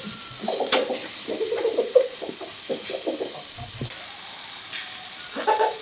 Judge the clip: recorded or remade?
recorded